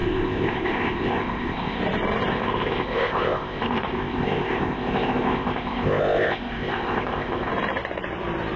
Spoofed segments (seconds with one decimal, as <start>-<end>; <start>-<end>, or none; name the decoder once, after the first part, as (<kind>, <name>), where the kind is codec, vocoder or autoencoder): 0.0-1.8 (codec, ZipCodec); 2.3-7.5